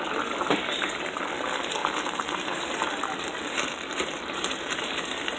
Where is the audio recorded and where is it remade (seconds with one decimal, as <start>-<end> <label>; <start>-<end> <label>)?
0.0-5.4 recorded